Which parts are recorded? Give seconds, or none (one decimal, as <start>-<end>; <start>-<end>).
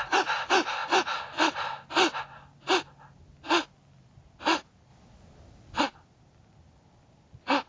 0.0-7.7